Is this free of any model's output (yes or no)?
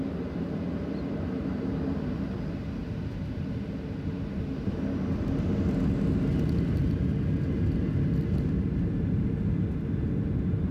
yes